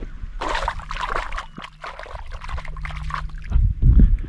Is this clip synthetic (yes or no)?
no